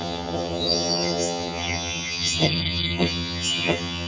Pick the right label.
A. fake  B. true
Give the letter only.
A